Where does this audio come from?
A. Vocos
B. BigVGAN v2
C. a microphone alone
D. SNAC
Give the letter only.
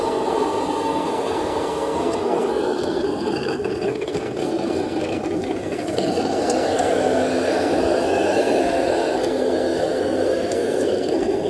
D